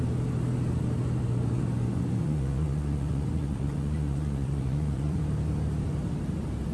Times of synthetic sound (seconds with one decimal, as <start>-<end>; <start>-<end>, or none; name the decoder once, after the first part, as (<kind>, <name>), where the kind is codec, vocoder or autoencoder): 1.2-5.2 (vocoder, Vocos)

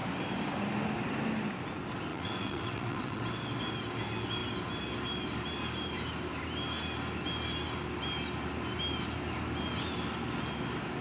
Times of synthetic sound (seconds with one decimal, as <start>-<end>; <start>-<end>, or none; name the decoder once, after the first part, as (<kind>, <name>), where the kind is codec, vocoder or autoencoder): 2.1-3.2 (vocoder, WaveNeXt)

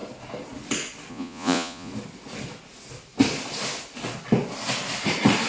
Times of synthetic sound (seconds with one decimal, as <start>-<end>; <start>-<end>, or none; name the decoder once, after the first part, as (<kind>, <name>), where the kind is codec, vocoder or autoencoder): 1.1-1.9 (vocoder, Vocos)

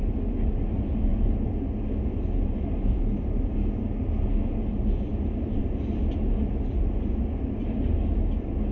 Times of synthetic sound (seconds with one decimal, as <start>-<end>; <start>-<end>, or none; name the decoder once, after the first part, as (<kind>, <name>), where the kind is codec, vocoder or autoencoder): none

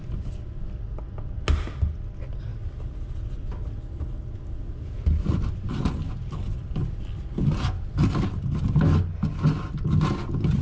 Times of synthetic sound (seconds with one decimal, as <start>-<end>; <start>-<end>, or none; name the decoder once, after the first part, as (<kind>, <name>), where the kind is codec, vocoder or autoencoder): none